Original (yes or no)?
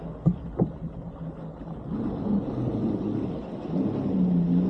yes